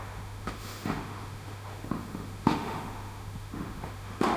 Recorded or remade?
remade